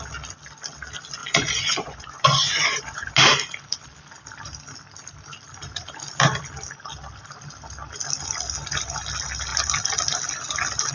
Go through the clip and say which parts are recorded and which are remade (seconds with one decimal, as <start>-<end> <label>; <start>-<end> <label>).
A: 0.0-1.2 recorded; 1.2-3.1 remade; 3.1-10.9 recorded